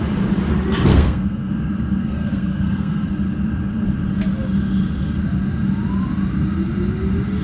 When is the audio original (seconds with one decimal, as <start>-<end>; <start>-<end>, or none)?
0.0-0.9; 1.5-2.0; 3.1-7.4